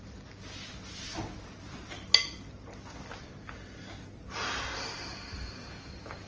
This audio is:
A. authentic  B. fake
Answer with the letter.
A